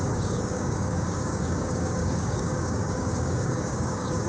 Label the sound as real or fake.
fake